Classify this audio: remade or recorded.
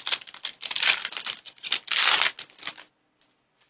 recorded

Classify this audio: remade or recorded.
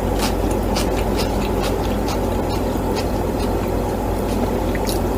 recorded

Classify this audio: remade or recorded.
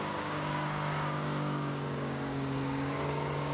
remade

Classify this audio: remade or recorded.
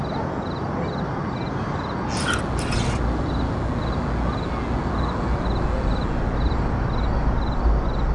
recorded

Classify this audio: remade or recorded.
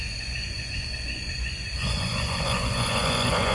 remade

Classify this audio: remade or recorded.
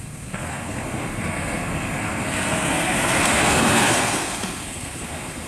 remade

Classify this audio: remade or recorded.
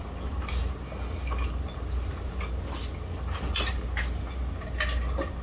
recorded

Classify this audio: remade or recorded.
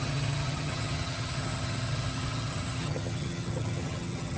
remade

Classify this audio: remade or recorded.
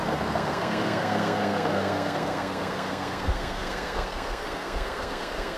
remade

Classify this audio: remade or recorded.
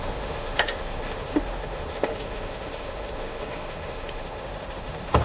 remade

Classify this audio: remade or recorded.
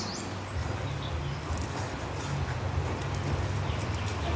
recorded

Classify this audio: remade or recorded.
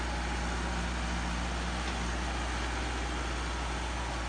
recorded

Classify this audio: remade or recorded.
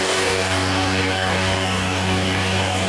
remade